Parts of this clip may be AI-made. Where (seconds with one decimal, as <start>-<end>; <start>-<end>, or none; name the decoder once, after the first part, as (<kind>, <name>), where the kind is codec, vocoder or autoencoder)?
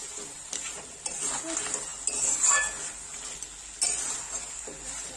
none